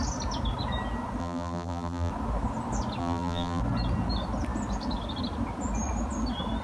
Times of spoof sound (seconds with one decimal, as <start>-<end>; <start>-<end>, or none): 1.2-2.1; 3.0-3.6